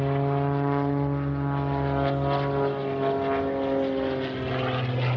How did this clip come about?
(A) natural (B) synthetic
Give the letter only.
A